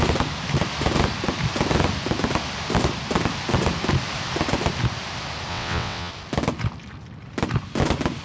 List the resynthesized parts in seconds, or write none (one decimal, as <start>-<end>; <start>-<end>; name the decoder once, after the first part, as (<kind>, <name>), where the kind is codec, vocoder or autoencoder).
5.5-6.1 (vocoder, WaveNeXt)

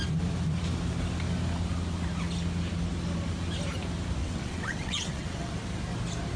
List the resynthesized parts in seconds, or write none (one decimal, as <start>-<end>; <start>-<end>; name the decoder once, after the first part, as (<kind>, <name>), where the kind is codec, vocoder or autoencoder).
4.2-5.5 (vocoder, WaveNeXt)

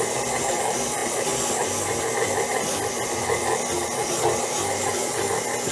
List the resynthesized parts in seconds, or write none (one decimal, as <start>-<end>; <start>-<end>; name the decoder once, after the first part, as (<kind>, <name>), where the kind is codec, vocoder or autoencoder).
none

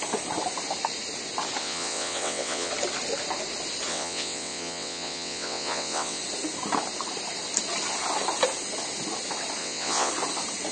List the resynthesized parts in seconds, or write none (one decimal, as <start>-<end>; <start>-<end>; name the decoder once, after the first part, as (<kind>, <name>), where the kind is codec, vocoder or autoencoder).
1.6-2.7 (vocoder, WaveNeXt); 3.9-6.2; 9.6-10.1

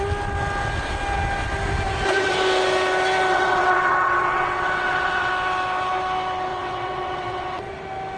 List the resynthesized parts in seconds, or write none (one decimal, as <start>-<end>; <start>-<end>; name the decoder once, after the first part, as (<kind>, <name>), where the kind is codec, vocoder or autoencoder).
3.3-5.3 (vocoder, WaveNeXt); 6.5-7.7

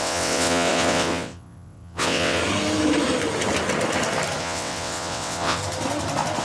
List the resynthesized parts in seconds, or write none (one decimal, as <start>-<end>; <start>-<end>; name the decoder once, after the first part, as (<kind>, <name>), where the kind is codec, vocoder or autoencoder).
0.0-2.4 (vocoder, WaveNeXt); 4.4-5.6

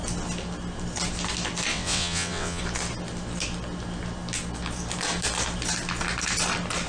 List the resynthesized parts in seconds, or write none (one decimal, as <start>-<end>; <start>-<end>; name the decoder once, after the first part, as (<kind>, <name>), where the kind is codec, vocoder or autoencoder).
1.7-2.6 (vocoder, WaveNeXt)

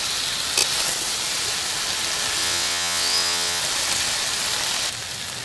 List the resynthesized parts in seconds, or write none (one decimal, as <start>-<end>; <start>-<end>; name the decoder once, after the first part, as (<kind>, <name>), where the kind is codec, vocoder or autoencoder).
2.4-3.6 (vocoder, WaveNeXt)